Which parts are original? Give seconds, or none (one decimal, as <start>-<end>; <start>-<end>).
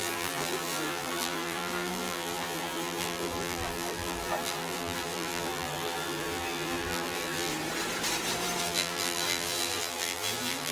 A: 7.5-8.6